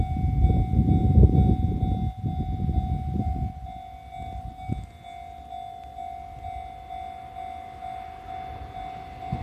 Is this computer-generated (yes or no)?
no